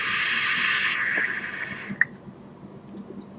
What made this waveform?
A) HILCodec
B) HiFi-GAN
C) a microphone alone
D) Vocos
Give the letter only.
C